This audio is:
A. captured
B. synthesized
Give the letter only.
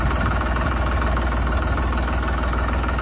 A